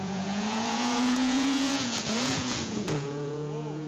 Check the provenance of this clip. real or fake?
fake